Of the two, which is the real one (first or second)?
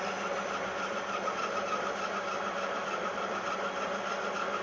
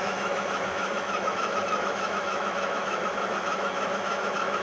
first